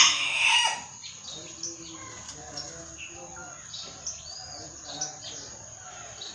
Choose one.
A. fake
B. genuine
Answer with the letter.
B